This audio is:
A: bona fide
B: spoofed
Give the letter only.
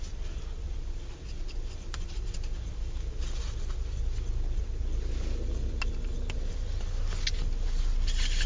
A